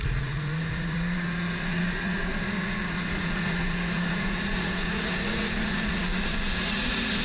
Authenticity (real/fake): fake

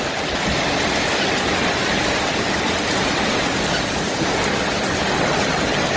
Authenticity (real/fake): real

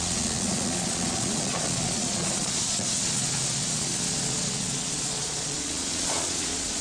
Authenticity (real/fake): fake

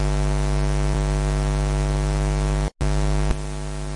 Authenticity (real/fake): real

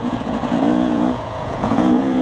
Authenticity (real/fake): fake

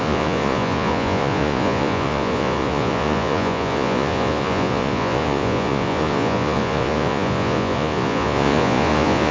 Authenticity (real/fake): fake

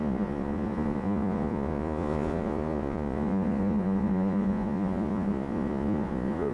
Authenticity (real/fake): fake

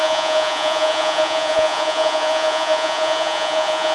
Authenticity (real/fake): fake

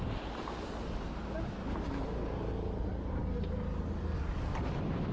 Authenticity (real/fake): real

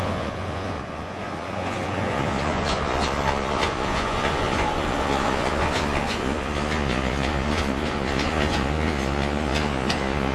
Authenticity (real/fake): fake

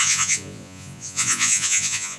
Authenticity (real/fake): fake